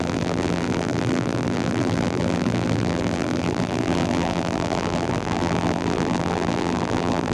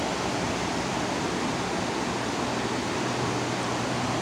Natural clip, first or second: second